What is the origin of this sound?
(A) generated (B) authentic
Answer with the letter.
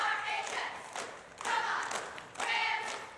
B